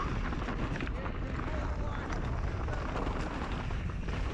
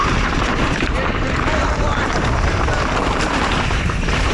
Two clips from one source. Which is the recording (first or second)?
first